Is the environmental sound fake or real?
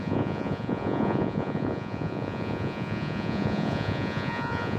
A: fake